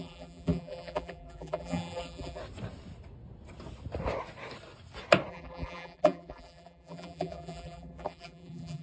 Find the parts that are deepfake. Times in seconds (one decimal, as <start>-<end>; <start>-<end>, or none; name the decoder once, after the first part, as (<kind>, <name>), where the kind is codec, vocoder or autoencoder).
0.0-2.4 (vocoder, BigVGAN v2); 5.3-8.8